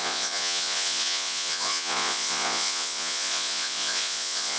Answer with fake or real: fake